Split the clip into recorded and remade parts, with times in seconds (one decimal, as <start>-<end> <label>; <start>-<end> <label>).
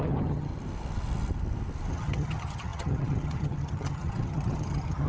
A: 0.0-0.5 remade; 0.5-1.9 recorded; 1.9-5.1 remade